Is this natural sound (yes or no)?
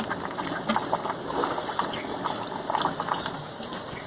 yes